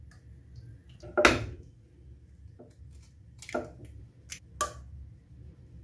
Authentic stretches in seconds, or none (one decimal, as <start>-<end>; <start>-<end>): 0.0-5.8